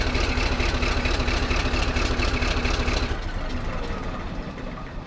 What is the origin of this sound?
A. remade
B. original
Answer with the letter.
B